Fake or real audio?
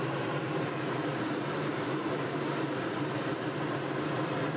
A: fake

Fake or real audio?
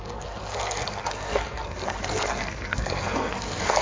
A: fake